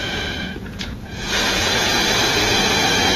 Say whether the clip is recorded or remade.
remade